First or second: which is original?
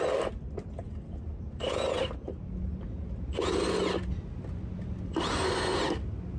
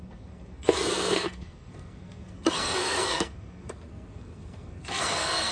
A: first